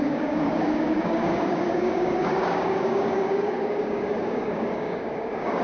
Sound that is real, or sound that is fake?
fake